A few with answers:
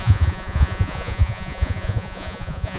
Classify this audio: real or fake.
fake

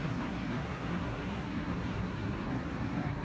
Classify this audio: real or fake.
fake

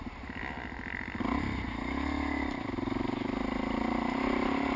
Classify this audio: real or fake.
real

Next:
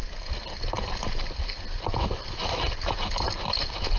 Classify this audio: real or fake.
real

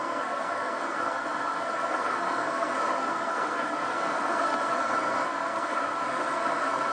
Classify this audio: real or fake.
fake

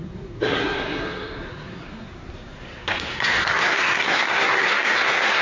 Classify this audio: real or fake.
fake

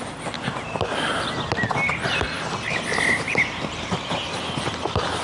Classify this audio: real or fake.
real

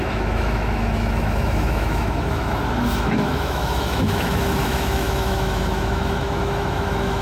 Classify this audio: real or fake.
fake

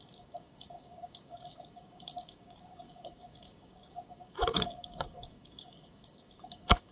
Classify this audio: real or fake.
fake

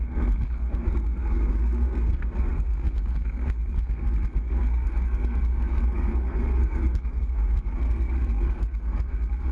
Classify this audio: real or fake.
fake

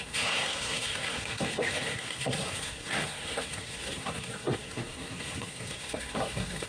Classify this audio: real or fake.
fake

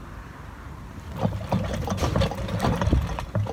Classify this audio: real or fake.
real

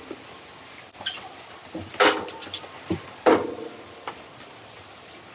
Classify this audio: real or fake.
real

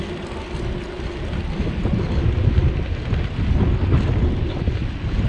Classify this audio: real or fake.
real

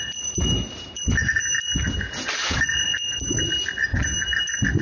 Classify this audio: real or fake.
real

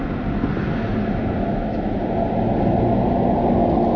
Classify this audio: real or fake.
real